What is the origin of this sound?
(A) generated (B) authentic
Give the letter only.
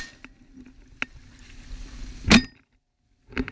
B